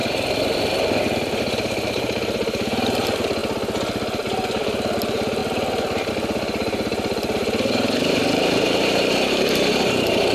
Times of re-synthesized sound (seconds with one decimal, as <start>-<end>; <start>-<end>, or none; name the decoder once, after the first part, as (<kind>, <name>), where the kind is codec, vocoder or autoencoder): 1.4-3.4 (vocoder, BigVGAN v2); 4.5-5.4; 6.1-10.3